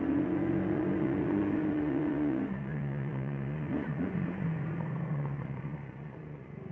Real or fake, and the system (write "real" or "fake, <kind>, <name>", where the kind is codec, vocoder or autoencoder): fake, vocoder, Vocos